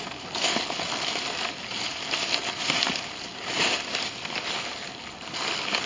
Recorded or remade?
recorded